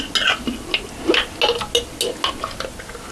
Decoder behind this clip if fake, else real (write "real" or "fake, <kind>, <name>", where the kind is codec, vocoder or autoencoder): real